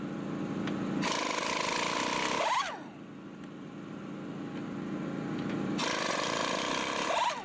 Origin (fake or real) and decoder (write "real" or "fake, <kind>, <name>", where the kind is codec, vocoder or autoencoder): real